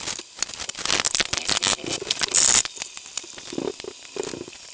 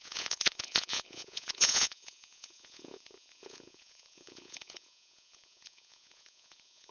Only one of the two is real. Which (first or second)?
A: first